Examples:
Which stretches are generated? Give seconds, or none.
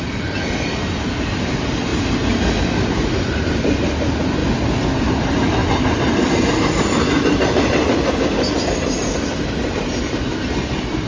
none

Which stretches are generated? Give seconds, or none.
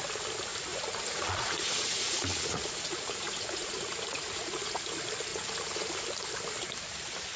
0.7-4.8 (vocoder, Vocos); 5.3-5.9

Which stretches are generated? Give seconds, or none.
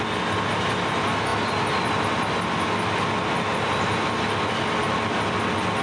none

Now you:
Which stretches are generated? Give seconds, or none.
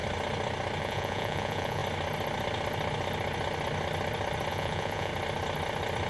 0.8-1.8 (vocoder, Vocos); 4.5-5.1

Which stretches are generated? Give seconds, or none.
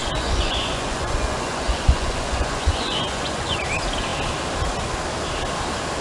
0.0-3.6 (vocoder, Vocos)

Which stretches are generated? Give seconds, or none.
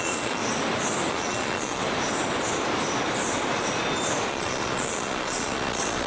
0.0-0.4 (vocoder, Vocos); 1.1-1.8; 4.3-6.1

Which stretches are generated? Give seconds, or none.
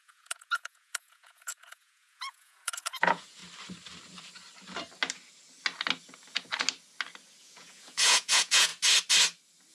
0.0-3.4 (vocoder, Vocos); 7.4-8.7